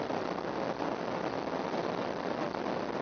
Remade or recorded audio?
recorded